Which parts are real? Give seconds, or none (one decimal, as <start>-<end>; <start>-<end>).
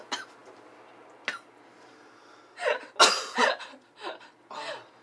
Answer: 0.0-5.0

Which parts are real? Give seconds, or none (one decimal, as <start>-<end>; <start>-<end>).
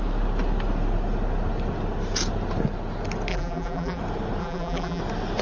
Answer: 0.0-3.3; 4.0-4.4; 5.0-5.4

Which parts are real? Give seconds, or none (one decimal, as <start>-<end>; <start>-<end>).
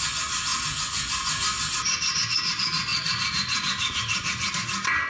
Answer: 0.0-2.9; 4.5-5.1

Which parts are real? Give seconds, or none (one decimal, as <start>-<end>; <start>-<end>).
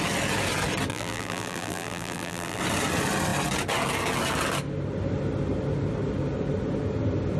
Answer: 0.0-0.9; 2.6-7.4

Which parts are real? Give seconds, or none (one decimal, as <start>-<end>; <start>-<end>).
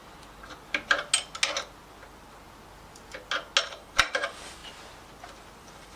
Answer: 0.0-3.6; 4.6-5.6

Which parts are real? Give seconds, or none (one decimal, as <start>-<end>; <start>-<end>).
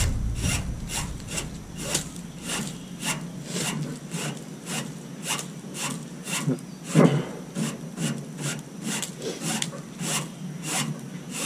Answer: 0.0-11.5